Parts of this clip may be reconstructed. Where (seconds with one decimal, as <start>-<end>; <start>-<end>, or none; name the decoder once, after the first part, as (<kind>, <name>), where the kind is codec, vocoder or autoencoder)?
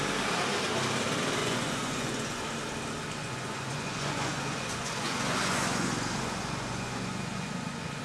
1.4-2.4 (vocoder, Vocos); 3.2-8.0